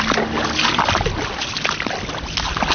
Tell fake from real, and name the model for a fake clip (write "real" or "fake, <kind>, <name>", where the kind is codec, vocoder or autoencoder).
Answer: real